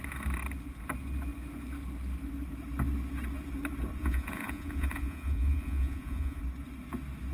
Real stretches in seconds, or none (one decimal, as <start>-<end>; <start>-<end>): 0.0-4.0; 6.4-7.3